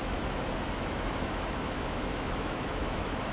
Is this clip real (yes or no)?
no